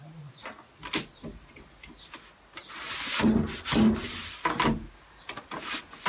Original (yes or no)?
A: yes